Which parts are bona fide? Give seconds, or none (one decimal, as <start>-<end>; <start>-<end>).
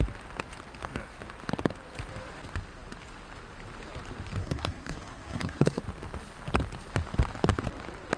0.0-4.4; 5.8-8.2